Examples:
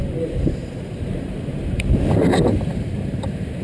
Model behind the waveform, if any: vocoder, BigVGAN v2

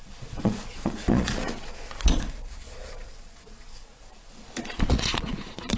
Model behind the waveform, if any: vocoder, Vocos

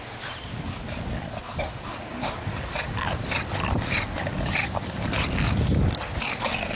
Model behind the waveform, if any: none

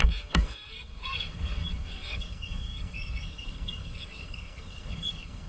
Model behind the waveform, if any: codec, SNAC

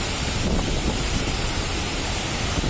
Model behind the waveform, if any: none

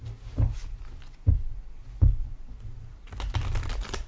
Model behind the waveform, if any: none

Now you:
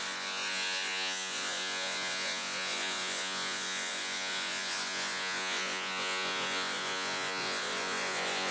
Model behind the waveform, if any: vocoder, Vocos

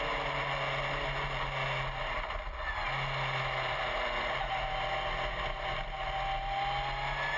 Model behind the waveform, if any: none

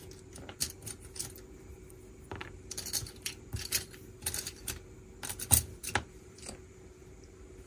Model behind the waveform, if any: vocoder, BigVGAN v2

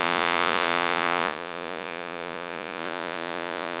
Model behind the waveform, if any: vocoder, Vocos